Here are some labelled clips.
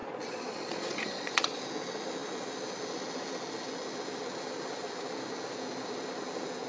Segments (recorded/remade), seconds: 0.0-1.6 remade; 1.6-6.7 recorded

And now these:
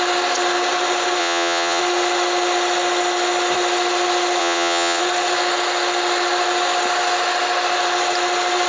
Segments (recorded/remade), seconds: 0.0-1.2 recorded; 1.2-1.8 remade; 1.8-4.4 recorded; 4.4-5.0 remade; 5.0-8.7 recorded

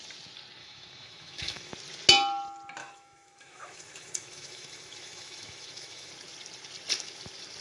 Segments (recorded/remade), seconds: 0.0-0.6 recorded; 0.6-1.7 remade; 1.7-2.8 recorded; 2.8-6.1 remade; 6.1-7.6 recorded